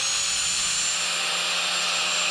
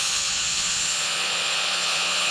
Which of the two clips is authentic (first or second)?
first